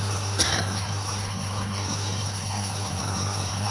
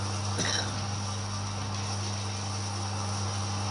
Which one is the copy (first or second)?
first